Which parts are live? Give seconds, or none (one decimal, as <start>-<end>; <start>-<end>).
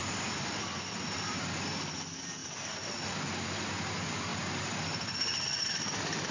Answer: 0.0-6.3